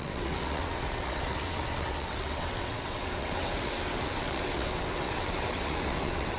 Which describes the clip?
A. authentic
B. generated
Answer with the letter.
B